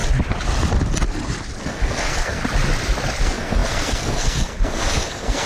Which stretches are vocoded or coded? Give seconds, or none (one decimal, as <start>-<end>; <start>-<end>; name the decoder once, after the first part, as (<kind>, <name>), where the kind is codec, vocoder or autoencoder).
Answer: 1.6-2.4 (codec, SNAC); 3.2-5.5